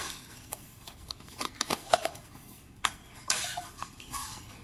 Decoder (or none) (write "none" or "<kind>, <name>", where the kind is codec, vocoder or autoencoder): codec, SNAC